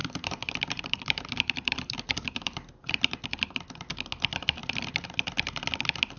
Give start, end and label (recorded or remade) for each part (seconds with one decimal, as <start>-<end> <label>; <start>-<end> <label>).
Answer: 0.0-3.4 remade; 3.4-6.2 recorded